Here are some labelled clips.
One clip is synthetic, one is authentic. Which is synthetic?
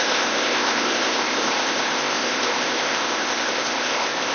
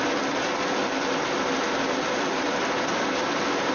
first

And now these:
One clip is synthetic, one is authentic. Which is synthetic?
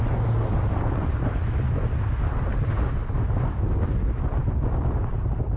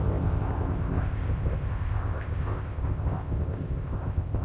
second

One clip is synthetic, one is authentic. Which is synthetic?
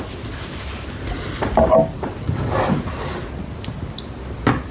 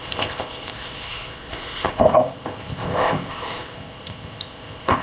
second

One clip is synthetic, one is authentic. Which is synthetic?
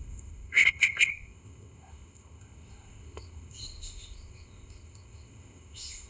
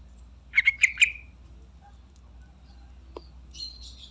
first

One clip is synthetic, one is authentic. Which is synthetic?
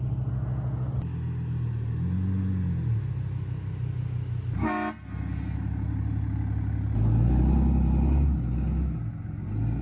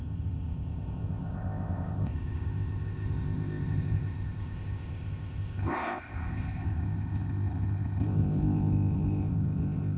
second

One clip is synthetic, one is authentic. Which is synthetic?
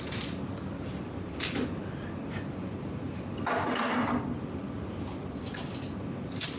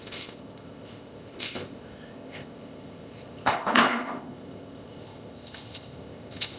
second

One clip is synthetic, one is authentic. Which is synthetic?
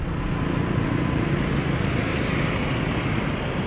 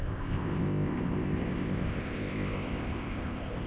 second